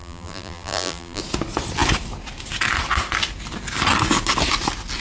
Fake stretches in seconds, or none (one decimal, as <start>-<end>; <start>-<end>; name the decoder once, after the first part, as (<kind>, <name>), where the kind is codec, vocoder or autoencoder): 0.0-1.2 (vocoder, BigVGAN v2)